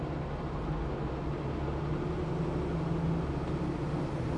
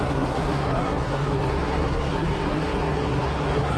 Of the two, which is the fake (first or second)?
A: second